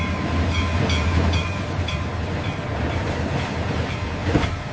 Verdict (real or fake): real